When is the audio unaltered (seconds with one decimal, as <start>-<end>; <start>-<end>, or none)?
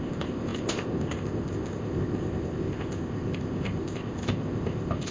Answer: none